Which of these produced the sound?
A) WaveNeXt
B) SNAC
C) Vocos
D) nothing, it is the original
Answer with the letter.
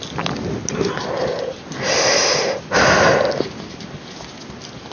D